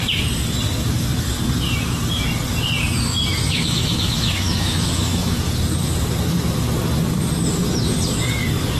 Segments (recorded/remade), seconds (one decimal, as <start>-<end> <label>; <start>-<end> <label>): 0.0-3.3 recorded; 3.3-5.4 remade; 5.4-8.8 recorded